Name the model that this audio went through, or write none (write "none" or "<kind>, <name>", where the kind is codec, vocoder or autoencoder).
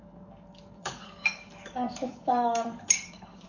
codec, DAC